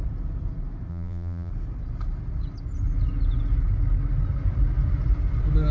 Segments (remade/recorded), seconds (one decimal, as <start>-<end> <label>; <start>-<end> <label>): 0.0-0.9 recorded; 0.9-1.5 remade; 1.5-5.7 recorded